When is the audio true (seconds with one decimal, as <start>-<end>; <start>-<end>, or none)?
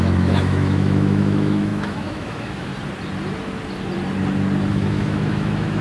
2.7-4.7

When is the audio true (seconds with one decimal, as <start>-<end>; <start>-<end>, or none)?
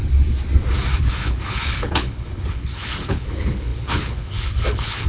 0.0-1.0